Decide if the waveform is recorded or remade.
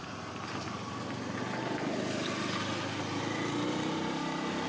recorded